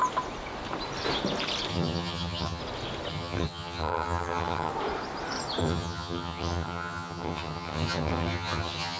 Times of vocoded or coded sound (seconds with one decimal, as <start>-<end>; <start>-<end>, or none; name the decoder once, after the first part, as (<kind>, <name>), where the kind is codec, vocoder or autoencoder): 1.7-2.6 (vocoder, HiFi-GAN); 3.1-4.7; 5.6-9.0